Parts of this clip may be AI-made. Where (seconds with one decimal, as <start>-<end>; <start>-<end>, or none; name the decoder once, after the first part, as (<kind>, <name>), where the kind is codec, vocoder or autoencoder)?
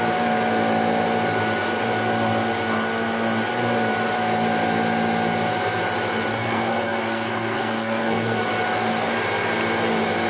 6.3-8.4 (codec, SNAC)